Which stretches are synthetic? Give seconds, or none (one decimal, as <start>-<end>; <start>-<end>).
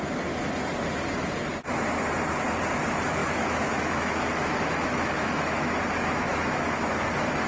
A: 3.2-5.8; 6.3-6.9